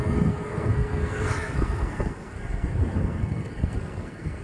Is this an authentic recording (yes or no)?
no